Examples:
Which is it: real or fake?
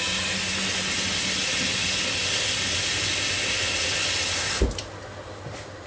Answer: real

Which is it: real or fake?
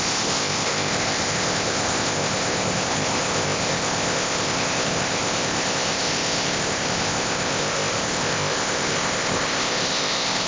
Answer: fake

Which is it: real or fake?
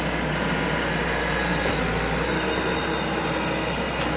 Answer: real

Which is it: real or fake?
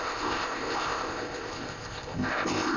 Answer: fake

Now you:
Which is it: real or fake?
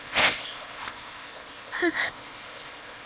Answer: fake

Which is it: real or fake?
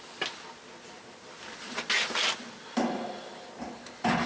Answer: real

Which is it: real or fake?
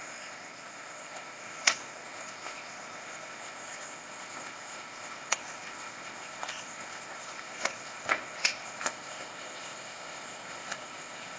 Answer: fake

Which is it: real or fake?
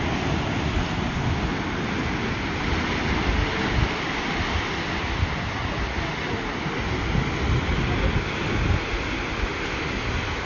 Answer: real